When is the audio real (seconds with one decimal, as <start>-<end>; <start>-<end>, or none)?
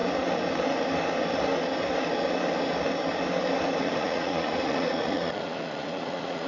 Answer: 0.0-3.8